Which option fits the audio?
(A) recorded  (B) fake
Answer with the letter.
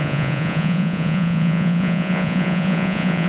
B